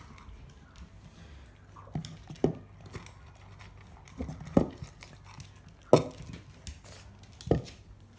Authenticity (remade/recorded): recorded